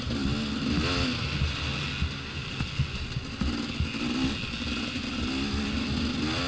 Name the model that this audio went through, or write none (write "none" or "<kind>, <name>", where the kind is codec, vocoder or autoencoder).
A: none